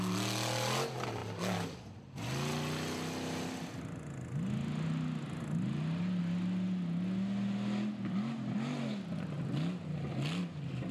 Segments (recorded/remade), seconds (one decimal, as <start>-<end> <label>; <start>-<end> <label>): 0.0-10.9 recorded